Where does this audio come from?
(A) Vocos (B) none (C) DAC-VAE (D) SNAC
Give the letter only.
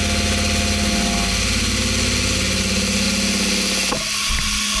B